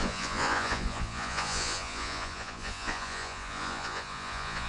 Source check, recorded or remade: remade